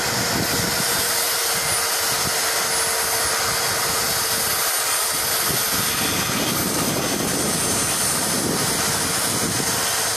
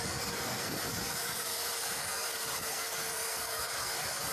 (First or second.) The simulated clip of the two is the second